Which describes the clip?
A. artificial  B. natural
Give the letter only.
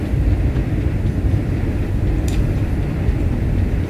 A